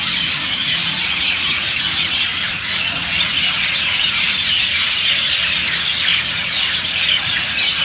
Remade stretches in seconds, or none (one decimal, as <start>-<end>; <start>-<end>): 0.6-5.3; 6.1-7.8